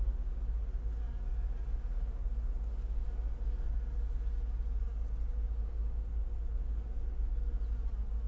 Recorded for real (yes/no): yes